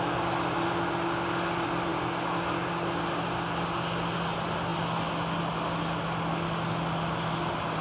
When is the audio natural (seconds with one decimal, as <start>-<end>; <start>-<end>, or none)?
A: 0.0-7.8